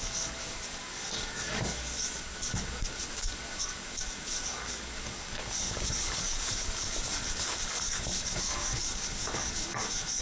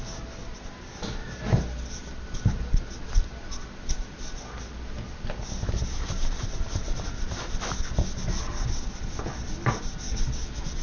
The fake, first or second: first